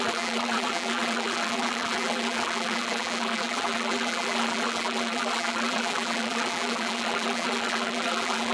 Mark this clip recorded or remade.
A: remade